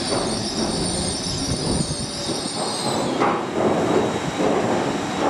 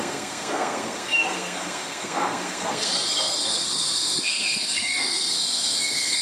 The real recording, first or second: first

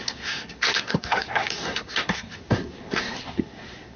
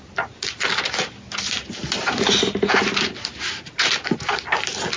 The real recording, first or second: second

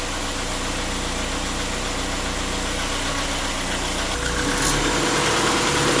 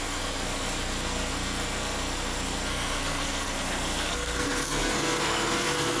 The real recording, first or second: first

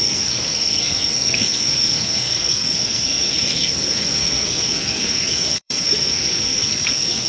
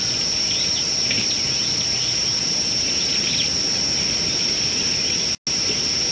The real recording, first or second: second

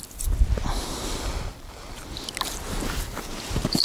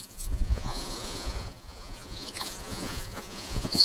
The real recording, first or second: first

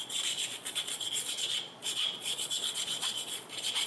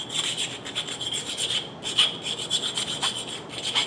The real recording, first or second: second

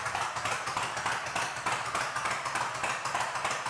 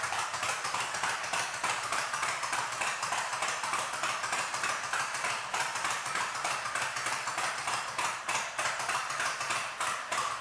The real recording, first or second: first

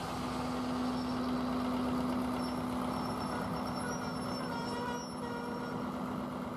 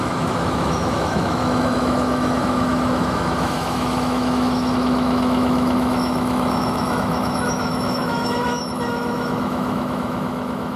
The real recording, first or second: first